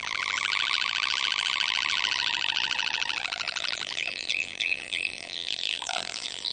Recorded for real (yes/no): no